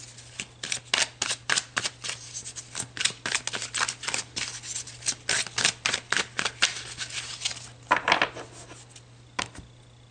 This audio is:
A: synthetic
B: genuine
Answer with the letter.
B